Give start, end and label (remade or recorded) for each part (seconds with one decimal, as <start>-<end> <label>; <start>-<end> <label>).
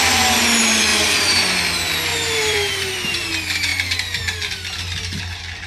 0.0-0.9 recorded; 0.9-1.6 remade; 1.6-2.1 recorded; 2.1-3.3 remade; 3.3-5.7 recorded